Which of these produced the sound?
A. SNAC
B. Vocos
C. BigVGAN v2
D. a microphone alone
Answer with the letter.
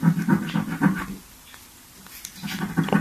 D